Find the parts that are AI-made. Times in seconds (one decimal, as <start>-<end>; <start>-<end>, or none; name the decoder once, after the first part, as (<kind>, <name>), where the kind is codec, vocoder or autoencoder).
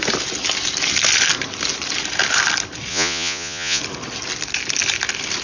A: 2.9-3.8 (vocoder, Vocos)